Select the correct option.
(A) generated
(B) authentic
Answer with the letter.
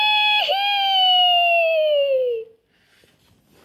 B